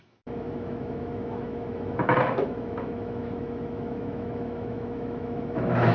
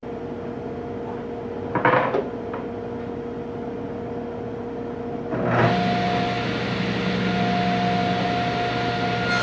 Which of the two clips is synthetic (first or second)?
first